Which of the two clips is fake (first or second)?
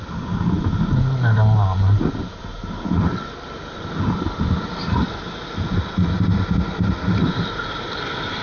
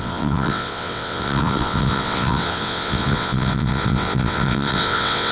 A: second